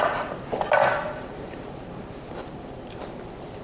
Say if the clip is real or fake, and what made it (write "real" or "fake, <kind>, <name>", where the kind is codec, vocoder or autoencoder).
fake, vocoder, BigVGAN v2